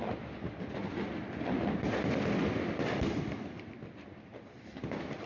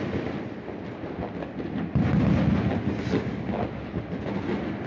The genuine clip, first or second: second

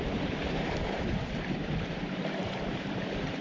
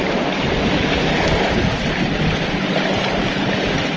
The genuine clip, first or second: second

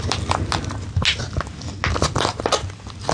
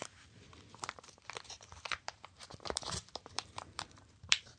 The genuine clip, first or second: first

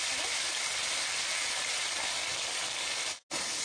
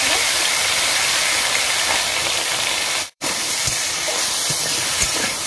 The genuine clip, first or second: first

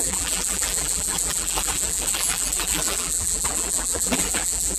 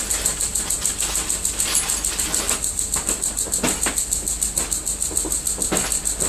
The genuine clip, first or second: second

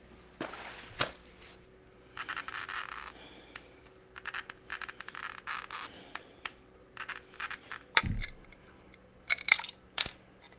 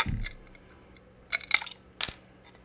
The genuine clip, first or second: second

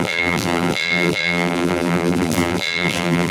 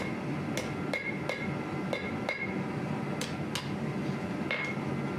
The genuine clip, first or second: second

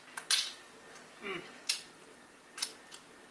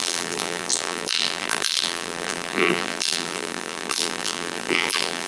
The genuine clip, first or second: first